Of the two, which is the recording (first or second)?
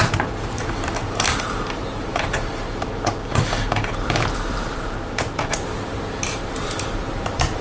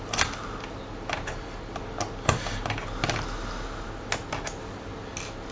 second